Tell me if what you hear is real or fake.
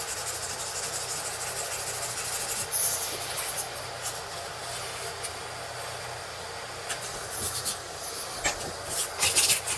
real